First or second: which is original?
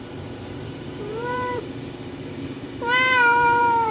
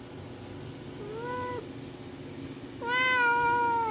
second